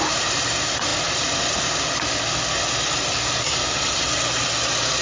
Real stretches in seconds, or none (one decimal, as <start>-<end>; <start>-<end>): 0.0-5.0